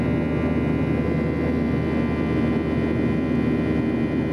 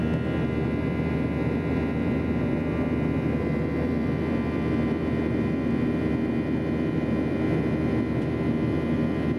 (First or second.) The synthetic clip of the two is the second